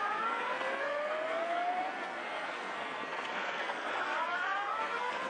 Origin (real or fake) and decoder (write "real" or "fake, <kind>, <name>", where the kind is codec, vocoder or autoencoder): fake, codec, SNAC